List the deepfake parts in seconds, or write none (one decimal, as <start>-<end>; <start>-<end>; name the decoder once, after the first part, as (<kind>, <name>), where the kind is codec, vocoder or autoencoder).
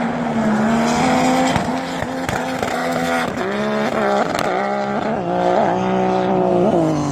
2.8-3.4 (codec, DAC)